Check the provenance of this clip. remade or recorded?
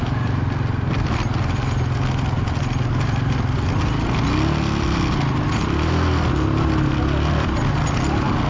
recorded